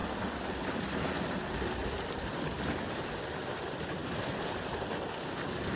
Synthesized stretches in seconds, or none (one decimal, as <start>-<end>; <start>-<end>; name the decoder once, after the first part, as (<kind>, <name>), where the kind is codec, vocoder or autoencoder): none